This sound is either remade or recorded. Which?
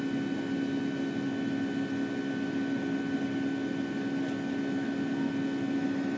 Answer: recorded